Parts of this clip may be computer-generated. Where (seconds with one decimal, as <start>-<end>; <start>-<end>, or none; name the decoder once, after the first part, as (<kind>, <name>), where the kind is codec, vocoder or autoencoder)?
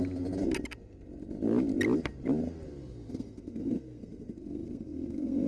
3.1-5.5 (codec, SNAC)